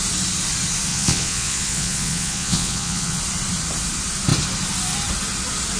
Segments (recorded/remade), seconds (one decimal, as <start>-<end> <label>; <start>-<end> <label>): 0.0-0.9 recorded; 0.9-3.2 remade; 3.2-5.8 recorded